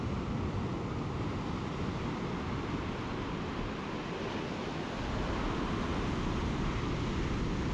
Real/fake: real